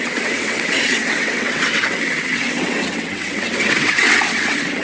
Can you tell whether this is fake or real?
fake